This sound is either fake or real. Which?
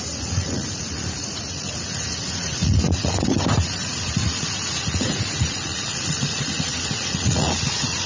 fake